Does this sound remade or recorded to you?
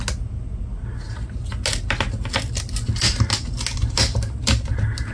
recorded